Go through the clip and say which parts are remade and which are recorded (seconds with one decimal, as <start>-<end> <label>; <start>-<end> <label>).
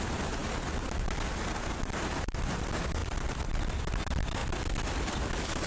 0.0-5.7 recorded